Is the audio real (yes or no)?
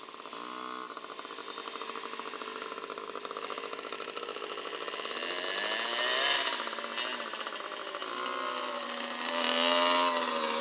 yes